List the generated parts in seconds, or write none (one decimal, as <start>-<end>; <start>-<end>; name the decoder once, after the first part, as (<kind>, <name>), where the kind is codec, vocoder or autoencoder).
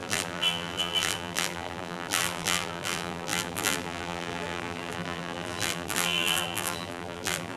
0.0-7.6 (vocoder, BigVGAN v2)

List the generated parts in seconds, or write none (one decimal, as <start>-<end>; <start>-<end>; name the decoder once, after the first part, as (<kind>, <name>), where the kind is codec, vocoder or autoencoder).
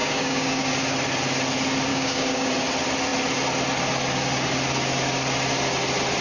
0.0-0.7 (codec, DAC); 1.9-2.5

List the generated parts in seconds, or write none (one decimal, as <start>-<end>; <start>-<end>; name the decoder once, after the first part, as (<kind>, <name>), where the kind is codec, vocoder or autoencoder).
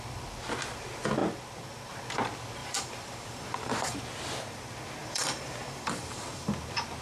2.6-4.0 (vocoder, BigVGAN v2); 5.0-6.5